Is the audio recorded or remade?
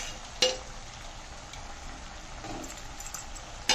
recorded